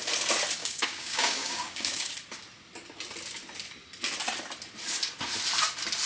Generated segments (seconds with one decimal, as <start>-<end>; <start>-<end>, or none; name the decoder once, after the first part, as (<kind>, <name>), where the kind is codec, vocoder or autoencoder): 0.6-2.1 (codec, DAC)